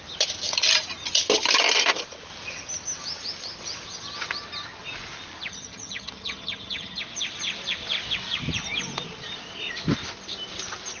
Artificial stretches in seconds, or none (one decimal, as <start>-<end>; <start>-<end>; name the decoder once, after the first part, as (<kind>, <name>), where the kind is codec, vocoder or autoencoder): 5.5-7.0 (vocoder, HiFi-GAN)